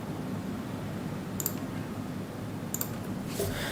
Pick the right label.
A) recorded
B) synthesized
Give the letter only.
A